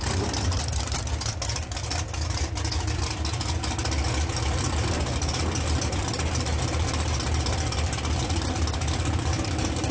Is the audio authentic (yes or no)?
no